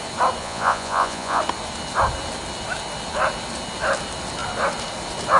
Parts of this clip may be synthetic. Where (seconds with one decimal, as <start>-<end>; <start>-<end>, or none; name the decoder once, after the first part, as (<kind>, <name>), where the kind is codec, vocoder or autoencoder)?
0.4-1.4 (vocoder, Vocos)